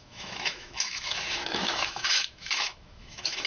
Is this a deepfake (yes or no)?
yes